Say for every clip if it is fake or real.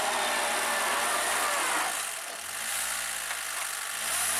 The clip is real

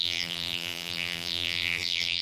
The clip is fake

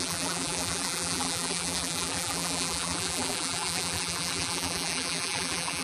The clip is fake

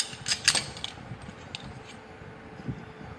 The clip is real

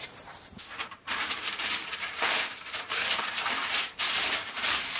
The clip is fake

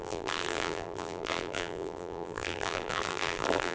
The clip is fake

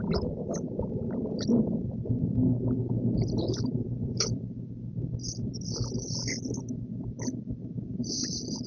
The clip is fake